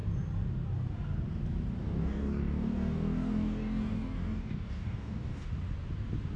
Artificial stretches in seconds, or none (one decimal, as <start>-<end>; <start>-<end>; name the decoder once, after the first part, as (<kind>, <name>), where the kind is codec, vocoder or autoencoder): 1.8-5.5 (codec, DAC)